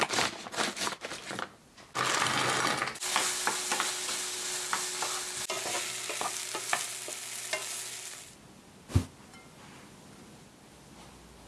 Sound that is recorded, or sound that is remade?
recorded